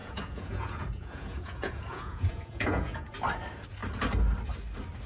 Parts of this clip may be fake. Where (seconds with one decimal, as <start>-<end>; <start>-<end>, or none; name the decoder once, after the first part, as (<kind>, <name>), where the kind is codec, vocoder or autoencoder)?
0.0-3.1 (vocoder, Vocos)